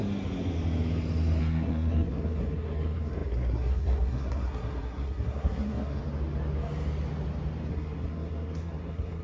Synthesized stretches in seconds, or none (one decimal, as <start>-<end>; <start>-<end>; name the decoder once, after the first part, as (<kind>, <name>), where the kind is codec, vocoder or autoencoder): 1.4-6.0 (codec, SNAC); 7.7-9.2